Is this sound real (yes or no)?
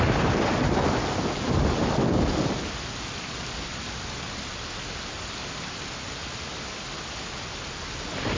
yes